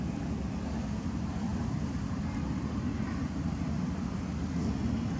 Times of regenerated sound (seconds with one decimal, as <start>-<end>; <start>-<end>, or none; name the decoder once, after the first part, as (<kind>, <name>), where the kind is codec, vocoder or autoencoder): 1.5-4.6 (vocoder, BigVGAN v2)